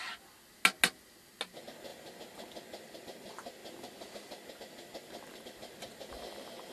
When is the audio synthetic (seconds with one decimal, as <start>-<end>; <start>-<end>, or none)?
none